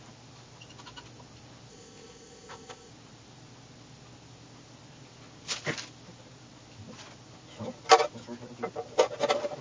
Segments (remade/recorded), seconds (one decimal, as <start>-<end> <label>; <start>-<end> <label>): 0.0-1.7 recorded; 1.7-2.9 remade; 2.9-9.6 recorded